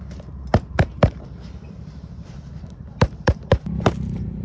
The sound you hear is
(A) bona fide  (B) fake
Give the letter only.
B